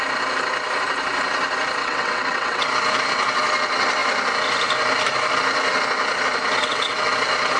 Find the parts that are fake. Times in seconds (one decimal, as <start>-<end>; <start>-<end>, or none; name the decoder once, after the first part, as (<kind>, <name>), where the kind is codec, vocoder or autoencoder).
1.8-2.7 (vocoder, WaveNeXt); 6.6-7.1